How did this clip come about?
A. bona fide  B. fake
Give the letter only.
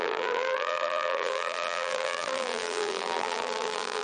B